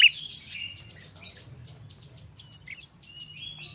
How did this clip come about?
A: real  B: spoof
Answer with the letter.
A